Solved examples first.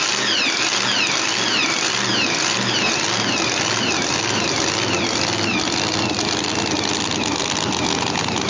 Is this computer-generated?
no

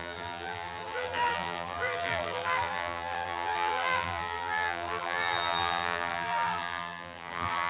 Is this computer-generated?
yes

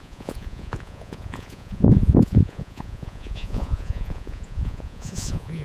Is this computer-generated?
yes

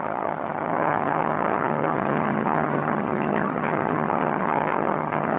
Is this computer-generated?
yes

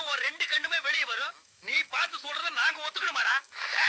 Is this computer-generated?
yes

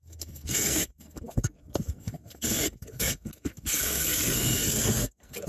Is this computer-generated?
yes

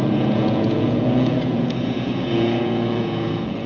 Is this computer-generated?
yes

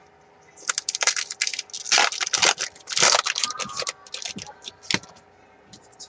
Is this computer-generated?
no